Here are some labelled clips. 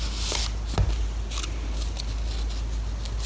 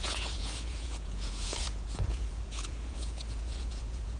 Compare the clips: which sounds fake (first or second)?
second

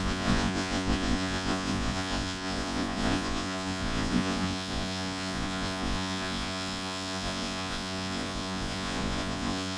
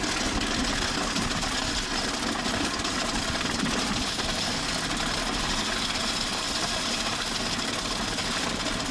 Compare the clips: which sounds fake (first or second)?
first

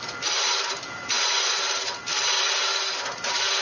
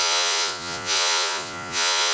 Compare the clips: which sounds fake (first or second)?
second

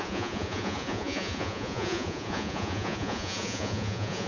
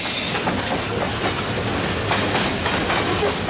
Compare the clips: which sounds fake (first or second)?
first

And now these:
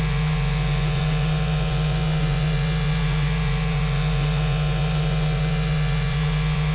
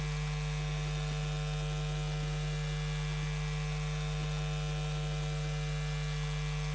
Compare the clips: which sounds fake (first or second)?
first